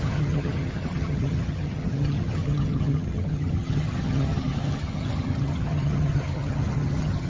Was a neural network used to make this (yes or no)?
yes